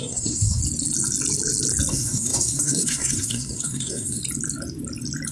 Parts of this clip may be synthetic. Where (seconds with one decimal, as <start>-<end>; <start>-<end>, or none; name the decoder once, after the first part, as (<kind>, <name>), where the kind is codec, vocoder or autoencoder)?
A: 0.0-0.6 (codec, SNAC); 1.9-4.2